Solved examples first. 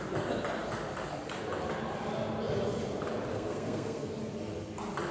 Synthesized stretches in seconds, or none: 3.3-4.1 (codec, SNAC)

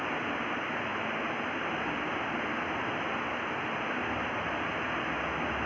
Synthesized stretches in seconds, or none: none

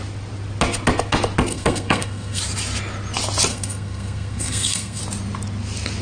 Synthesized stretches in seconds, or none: 1.5-2.4 (codec, SNAC); 3.5-5.0

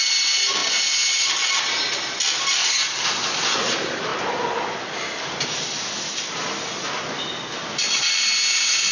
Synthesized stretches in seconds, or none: none

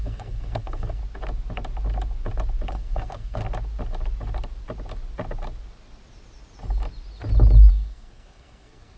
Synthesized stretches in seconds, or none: 0.0-1.0 (codec, SNAC); 2.7-3.4; 7.7-9.0

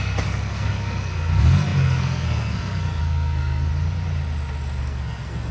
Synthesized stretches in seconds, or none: 0.0-3.7 (codec, SNAC); 4.8-5.5